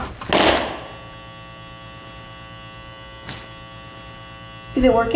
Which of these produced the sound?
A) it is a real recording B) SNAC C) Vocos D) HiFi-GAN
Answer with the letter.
A